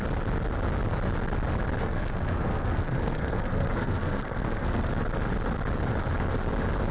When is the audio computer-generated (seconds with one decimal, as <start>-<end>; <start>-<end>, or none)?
1.8-4.9

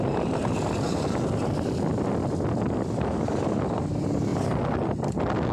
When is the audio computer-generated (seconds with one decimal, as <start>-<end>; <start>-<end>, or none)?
none

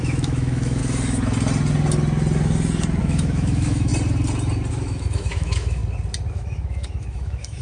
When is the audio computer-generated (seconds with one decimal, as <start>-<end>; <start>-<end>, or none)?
0.0-0.8; 3.0-3.9; 4.7-5.8; 6.3-7.6